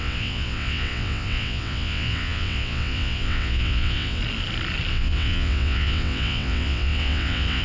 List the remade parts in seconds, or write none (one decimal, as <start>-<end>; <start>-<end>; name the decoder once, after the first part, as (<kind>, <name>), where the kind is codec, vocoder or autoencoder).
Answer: 0.0-4.2 (vocoder, WaveNeXt); 4.9-7.6